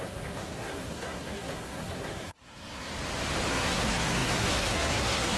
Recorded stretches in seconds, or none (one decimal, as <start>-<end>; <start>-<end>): 2.9-3.5